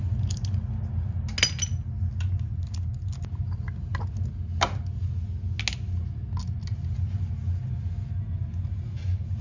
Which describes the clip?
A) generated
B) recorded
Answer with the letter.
B